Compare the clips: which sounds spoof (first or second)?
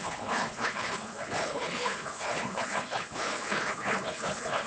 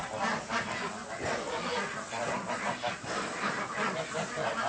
first